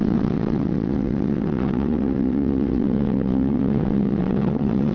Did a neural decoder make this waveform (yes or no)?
yes